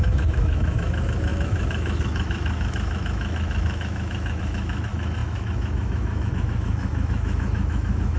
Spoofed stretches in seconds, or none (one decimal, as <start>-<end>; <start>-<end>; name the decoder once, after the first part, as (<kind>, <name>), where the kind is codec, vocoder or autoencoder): 0.0-8.2 (autoencoder, DAC-VAE)